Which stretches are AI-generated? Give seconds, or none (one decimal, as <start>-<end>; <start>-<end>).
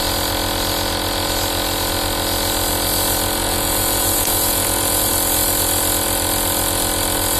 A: 3.4-5.1